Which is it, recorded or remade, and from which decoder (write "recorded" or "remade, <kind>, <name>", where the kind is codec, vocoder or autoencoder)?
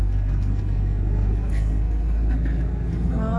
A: remade, codec, SNAC